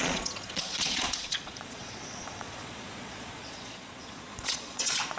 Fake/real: fake